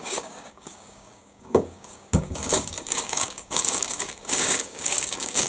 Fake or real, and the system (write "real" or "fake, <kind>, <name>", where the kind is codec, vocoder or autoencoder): fake, codec, DAC